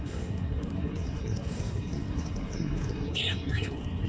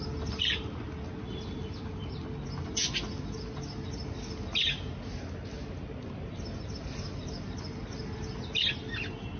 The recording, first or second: second